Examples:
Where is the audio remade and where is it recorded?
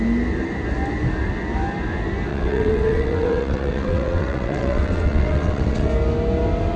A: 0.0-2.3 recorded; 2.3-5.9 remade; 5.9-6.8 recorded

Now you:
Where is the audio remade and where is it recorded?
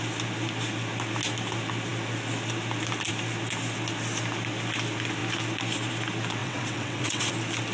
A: 0.0-6.4 recorded; 6.4-7.3 remade; 7.3-7.7 recorded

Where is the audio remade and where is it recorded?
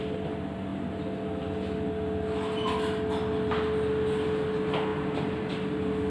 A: 0.0-6.1 recorded